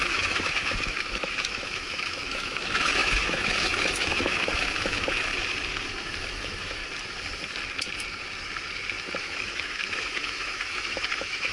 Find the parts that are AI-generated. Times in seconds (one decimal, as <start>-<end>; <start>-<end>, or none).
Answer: 0.0-5.3; 6.2-6.8; 9.2-11.5